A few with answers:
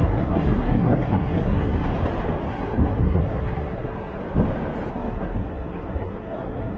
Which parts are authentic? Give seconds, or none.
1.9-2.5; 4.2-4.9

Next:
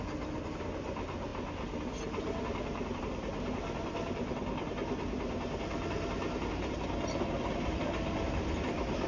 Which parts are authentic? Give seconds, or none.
0.0-9.1

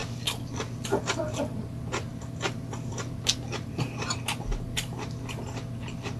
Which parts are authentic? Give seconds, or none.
0.0-6.2

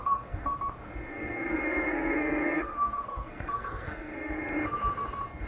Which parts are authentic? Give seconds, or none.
0.6-1.1; 4.4-5.5

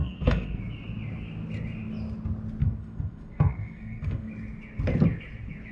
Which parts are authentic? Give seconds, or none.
0.6-2.6; 4.3-5.7

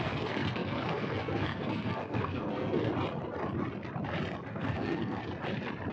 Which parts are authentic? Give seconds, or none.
2.9-4.5; 5.2-5.9

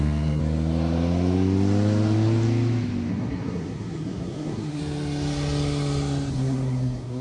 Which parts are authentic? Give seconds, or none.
0.4-3.1; 4.8-6.3